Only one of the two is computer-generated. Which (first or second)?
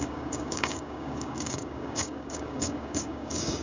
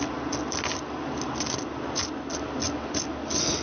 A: first